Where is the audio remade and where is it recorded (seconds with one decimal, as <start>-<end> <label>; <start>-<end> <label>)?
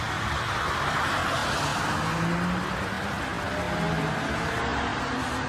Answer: 0.0-5.5 recorded